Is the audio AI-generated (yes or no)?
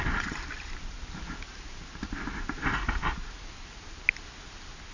no